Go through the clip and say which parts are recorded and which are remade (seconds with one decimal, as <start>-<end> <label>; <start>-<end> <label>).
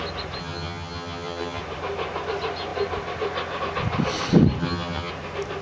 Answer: 0.0-0.4 recorded; 0.4-1.6 remade; 1.6-4.6 recorded; 4.6-5.1 remade; 5.1-5.6 recorded